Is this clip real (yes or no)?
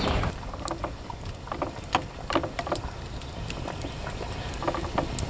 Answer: yes